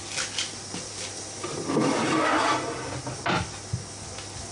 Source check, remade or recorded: recorded